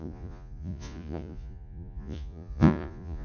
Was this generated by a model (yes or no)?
yes